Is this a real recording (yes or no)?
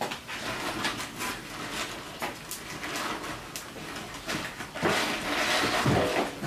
yes